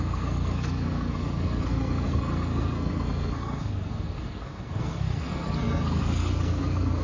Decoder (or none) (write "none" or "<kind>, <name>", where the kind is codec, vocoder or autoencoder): codec, SNAC